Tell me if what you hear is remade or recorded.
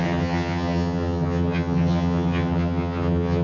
remade